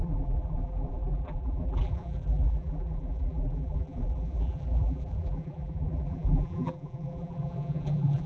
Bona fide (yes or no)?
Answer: no